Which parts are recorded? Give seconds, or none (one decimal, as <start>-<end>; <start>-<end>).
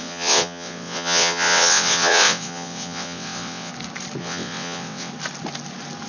3.7-4.2; 5.1-6.1